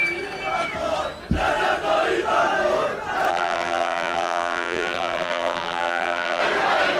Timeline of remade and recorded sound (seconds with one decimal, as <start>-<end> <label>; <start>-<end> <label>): 0.0-3.3 recorded; 3.3-6.4 remade; 6.4-7.0 recorded